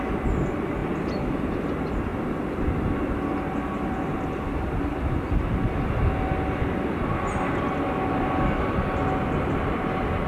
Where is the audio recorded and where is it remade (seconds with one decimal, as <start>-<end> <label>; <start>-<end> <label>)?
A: 0.0-0.8 recorded; 0.8-1.5 remade; 1.5-10.3 recorded